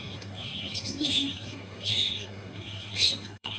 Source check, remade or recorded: remade